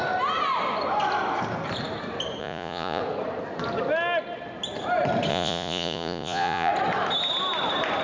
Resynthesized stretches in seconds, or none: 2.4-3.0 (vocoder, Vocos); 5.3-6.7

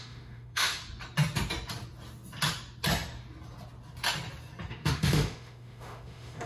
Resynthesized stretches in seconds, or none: 0.0-0.8 (autoencoder, DAC-VAE); 4.7-6.5

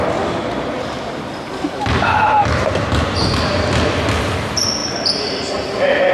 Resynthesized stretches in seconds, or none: none

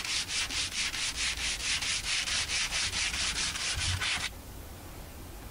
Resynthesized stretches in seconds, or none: 1.6-4.9 (vocoder, BigVGAN v2)